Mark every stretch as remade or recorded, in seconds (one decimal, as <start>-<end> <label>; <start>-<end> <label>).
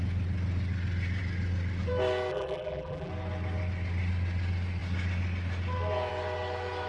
0.0-2.3 recorded; 2.3-3.1 remade; 3.1-6.9 recorded